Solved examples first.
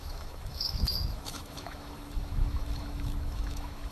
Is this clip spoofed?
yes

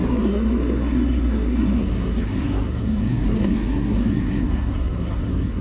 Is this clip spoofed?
yes